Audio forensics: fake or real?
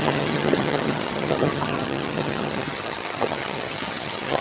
fake